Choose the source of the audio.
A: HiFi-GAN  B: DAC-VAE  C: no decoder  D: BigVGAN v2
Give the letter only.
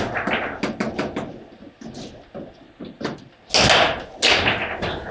C